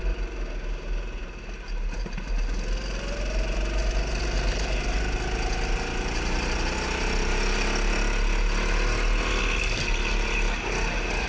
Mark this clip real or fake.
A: real